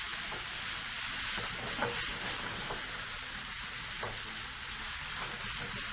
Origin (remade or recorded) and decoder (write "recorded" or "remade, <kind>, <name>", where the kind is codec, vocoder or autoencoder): recorded